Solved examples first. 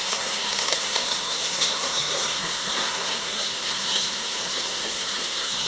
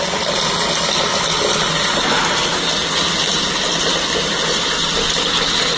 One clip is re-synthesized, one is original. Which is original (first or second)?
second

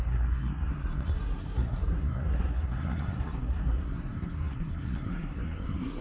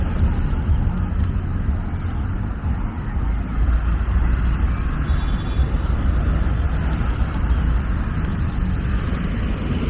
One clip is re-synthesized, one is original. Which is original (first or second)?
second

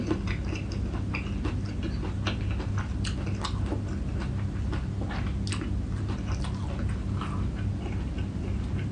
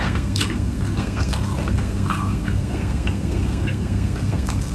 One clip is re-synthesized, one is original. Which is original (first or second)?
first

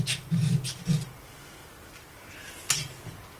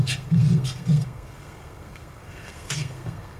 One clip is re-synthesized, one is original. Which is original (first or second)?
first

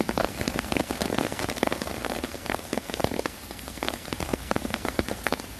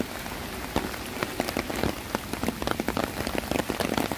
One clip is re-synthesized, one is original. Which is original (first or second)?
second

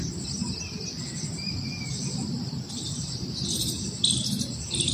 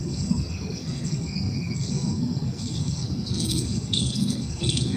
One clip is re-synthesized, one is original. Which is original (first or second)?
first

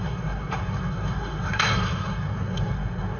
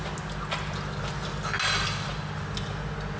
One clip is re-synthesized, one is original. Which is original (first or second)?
second